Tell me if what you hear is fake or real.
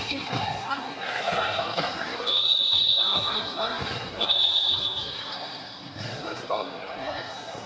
fake